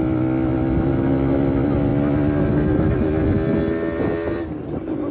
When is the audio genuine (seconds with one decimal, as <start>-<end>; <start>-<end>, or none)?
0.0-5.1